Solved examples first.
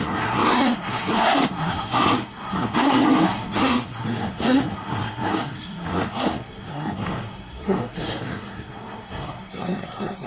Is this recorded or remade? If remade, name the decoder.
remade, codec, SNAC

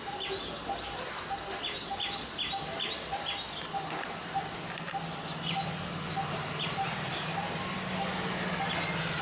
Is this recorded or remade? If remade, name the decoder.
recorded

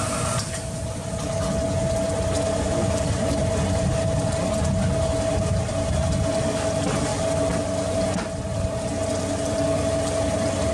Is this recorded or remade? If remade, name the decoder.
recorded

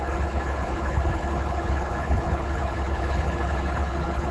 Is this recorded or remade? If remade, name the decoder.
remade, codec, HILCodec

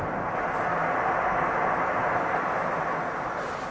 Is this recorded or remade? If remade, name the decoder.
recorded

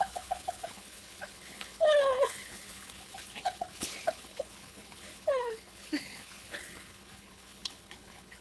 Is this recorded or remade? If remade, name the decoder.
remade, codec, HILCodec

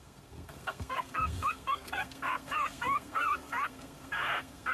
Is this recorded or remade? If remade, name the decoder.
remade, codec, SNAC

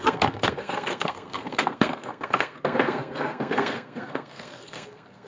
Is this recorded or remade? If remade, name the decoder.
remade, codec, SNAC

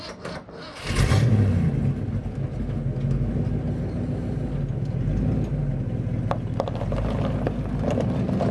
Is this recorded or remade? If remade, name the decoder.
recorded